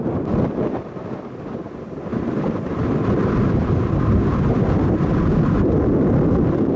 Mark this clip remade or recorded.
remade